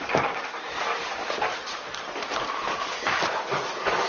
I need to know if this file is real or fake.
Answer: real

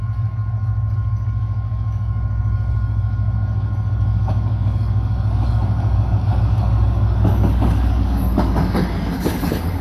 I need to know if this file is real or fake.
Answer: fake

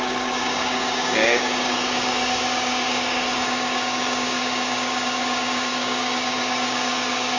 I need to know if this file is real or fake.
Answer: fake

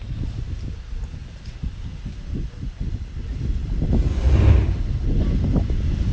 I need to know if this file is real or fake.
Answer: real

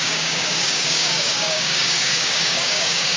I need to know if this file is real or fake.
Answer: fake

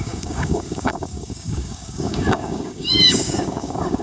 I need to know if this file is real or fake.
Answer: fake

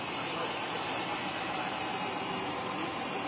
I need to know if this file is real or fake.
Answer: real